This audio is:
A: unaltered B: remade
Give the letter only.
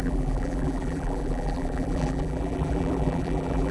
B